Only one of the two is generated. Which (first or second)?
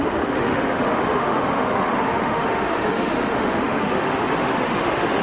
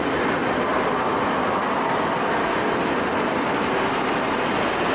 first